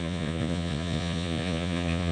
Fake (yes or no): yes